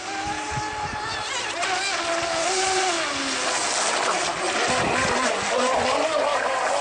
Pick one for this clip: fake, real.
real